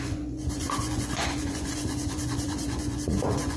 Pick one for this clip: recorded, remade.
remade